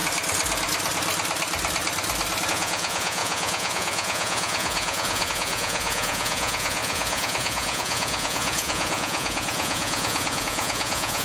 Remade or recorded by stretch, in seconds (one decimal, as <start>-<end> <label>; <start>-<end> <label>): 0.0-2.5 recorded; 2.5-11.2 remade